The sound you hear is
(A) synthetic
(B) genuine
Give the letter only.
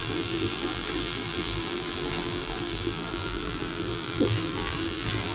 A